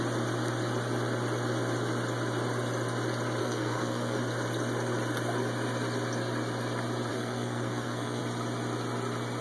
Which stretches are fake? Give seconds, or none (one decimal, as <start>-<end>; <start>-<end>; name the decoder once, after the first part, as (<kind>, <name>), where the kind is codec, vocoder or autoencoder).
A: 3.4-4.2 (codec, SNAC); 7.1-8.2

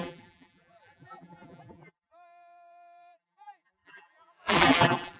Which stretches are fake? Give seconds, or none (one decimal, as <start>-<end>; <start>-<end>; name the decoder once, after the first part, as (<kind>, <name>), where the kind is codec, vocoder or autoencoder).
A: 0.0-5.2 (vocoder, BigVGAN v2)

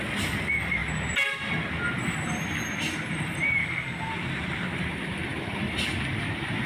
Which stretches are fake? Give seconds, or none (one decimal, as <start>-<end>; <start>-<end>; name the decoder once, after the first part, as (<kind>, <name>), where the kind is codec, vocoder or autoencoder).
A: 3.6-4.1 (codec, SNAC)

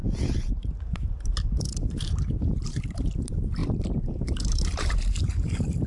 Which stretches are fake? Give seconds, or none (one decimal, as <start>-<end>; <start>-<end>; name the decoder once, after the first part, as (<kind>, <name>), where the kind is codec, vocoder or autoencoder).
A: 0.5-3.6 (vocoder, BigVGAN v2); 4.2-5.9

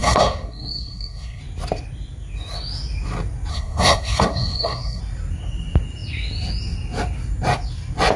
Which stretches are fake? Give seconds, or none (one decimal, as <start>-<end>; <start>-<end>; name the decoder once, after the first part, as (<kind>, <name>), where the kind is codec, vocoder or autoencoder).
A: 0.0-1.4 (codec, SNAC); 3.5-5.0

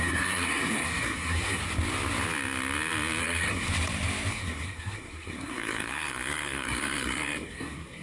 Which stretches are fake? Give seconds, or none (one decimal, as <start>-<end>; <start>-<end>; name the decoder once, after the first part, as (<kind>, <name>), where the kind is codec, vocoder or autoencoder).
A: 0.0-1.6 (codec, SNAC); 3.2-3.7; 4.3-8.0

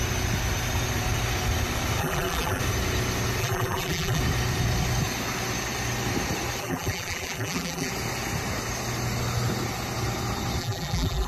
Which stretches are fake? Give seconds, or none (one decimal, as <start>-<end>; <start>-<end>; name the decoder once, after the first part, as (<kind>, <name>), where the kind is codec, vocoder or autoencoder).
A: 2.0-2.6 (vocoder, BigVGAN v2); 3.4-4.2; 6.6-7.9; 10.6-11.3

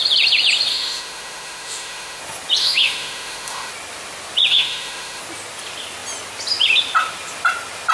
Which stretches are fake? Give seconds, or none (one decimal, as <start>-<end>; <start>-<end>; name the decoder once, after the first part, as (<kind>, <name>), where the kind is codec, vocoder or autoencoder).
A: 0.7-2.2 (autoencoder, DAC-VAE); 2.6-3.7; 4.5-5.2